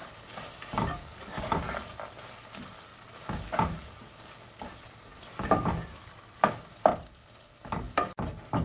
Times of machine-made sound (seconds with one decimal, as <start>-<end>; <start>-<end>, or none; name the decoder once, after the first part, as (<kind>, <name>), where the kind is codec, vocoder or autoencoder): none